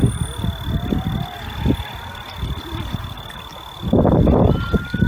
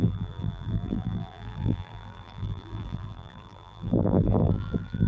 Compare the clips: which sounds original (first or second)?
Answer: first